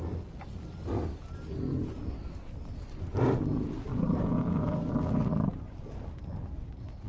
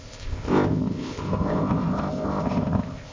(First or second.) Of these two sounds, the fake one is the second